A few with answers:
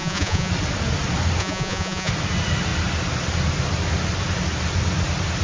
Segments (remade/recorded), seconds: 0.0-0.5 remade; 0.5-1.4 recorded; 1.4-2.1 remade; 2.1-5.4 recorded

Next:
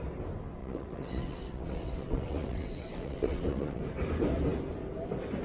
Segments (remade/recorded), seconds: 0.0-0.6 recorded; 0.6-3.8 remade; 3.8-5.4 recorded

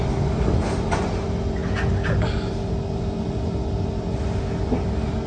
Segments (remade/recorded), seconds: 0.0-5.3 recorded

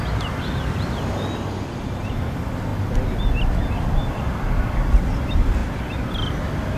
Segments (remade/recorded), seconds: 0.0-6.8 recorded

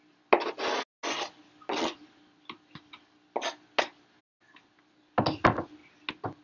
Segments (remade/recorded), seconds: 0.0-6.4 recorded